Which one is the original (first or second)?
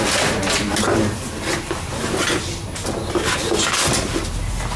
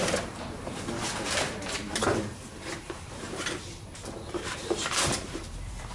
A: first